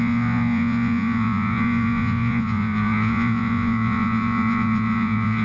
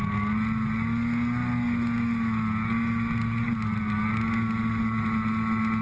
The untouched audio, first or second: second